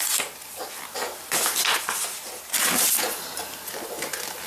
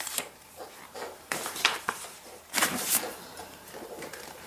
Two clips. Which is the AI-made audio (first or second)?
second